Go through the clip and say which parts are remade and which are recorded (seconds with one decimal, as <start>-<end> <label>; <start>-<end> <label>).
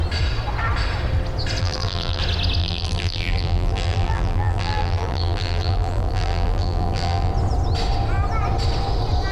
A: 0.0-1.6 recorded; 1.6-2.2 remade; 2.2-2.6 recorded; 2.6-7.3 remade; 7.3-9.3 recorded